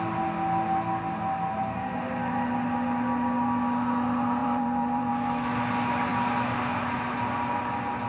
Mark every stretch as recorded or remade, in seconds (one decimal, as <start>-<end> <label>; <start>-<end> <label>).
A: 0.0-4.4 recorded; 4.4-5.1 remade; 5.1-8.1 recorded